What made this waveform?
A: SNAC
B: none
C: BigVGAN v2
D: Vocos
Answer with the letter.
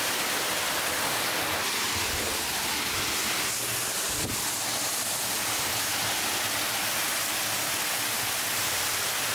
B